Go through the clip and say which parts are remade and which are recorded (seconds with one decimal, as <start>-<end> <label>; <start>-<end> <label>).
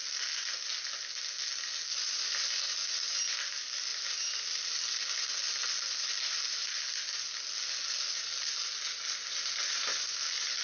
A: 0.0-10.6 recorded